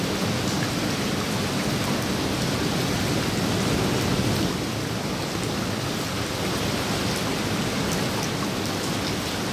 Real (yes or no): yes